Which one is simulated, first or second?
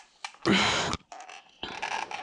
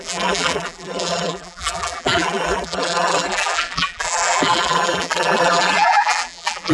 second